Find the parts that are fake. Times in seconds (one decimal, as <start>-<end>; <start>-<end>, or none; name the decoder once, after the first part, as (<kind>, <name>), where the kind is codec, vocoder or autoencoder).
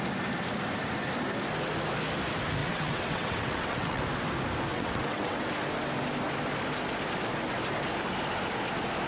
2.6-4.0 (vocoder, WaveNeXt); 4.7-5.4